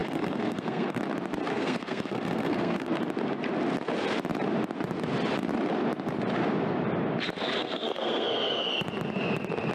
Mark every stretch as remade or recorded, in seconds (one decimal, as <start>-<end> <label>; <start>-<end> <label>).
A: 0.0-1.0 remade; 1.0-1.5 recorded; 1.5-3.0 remade; 3.0-7.6 recorded; 7.6-8.7 remade; 8.7-9.7 recorded